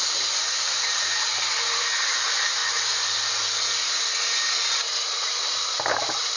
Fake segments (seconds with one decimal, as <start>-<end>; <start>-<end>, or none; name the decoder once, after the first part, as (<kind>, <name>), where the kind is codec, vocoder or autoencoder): 0.0-2.6 (vocoder, BigVGAN v2); 6.0-6.4